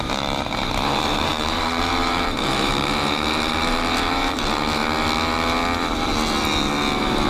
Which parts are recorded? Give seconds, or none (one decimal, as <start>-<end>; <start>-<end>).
4.8-7.3

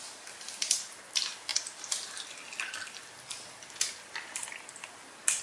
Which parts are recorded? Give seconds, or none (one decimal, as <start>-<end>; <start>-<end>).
0.0-5.4

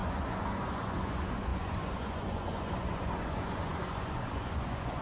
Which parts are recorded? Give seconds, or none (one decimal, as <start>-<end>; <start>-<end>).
none

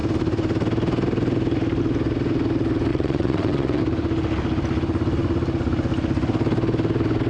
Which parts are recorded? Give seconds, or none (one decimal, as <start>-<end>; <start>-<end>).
0.0-2.9; 3.8-7.3

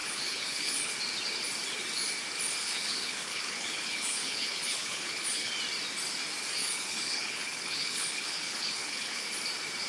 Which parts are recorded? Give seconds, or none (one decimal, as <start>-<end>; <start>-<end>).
0.9-2.6; 5.5-6.6; 9.3-9.9